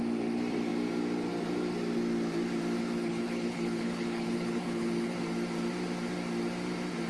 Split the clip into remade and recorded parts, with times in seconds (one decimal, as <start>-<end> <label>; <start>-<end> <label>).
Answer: 0.0-2.8 recorded; 2.8-5.2 remade; 5.2-7.1 recorded